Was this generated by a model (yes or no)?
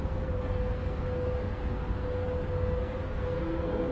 yes